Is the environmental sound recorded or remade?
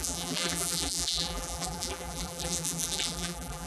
remade